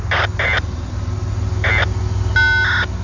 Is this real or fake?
real